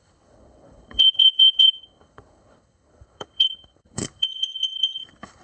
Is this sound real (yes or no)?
no